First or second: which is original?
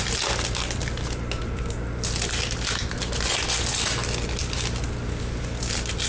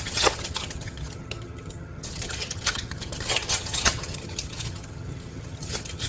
first